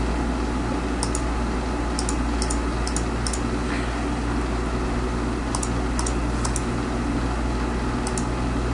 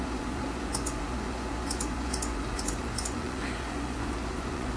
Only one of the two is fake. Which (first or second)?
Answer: second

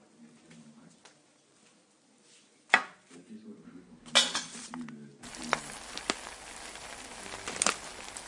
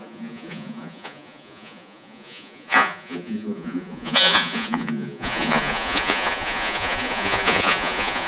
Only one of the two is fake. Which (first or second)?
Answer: second